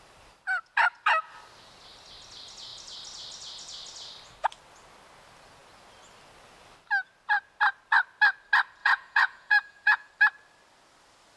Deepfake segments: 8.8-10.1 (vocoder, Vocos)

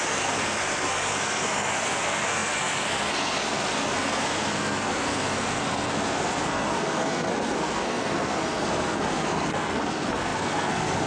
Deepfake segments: 0.0-11.1 (codec, SNAC)

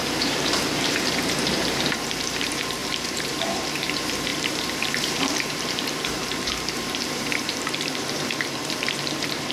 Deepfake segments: 0.0-9.5 (vocoder, BigVGAN v2)

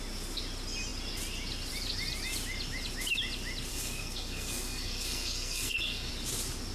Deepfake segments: 3.7-6.1 (codec, SNAC)

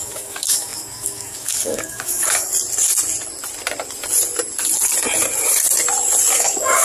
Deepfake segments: 0.0-2.5 (codec, DAC); 6.3-6.8

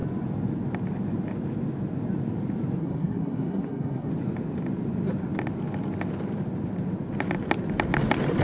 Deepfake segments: 2.8-4.1 (codec, SNAC)